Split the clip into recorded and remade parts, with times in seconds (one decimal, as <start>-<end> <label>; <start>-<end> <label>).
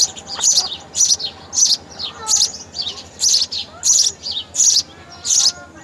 0.0-5.8 recorded